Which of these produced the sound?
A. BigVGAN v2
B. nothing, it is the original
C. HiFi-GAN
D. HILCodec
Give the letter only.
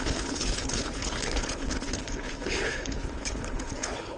D